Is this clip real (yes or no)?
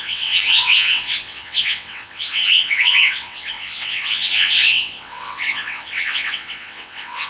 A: no